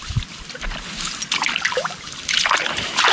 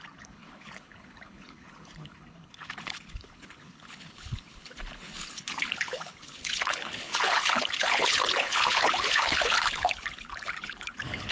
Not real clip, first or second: second